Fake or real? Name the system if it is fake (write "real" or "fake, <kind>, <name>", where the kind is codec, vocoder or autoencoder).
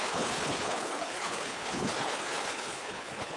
fake, codec, HILCodec